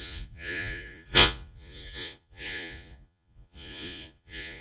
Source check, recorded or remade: remade